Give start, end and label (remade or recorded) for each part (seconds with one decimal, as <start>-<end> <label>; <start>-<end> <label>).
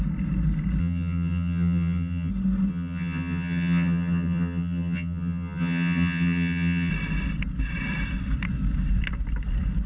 0.0-0.8 recorded; 0.8-2.3 remade; 2.3-2.7 recorded; 2.7-6.9 remade; 6.9-9.9 recorded